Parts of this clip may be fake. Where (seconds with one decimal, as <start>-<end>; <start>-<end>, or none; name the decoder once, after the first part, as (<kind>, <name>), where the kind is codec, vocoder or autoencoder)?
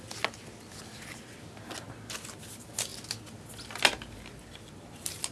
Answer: none